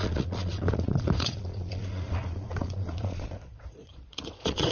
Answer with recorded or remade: remade